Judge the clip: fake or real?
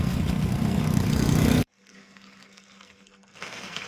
fake